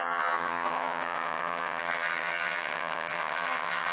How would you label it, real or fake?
fake